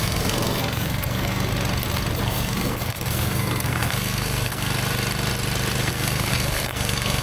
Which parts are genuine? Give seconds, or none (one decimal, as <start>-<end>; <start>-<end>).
1.5-2.2; 4.7-5.8